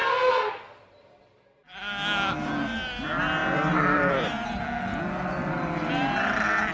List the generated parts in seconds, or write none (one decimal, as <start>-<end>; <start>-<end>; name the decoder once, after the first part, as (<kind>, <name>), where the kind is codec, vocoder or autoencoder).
0.0-0.5 (codec, SNAC)